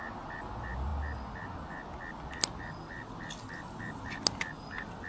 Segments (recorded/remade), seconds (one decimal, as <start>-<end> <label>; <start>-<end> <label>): 0.0-5.1 recorded